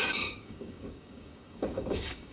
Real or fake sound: fake